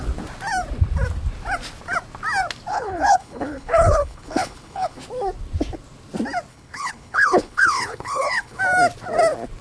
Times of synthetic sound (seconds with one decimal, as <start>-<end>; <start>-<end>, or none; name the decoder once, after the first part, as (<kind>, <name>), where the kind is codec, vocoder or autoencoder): 2.7-5.0 (codec, HILCodec); 6.5-8.6